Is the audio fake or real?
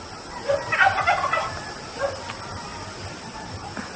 real